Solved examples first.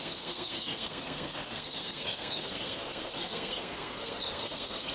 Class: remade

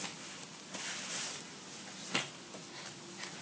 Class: recorded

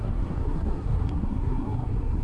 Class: remade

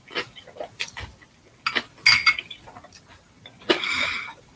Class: recorded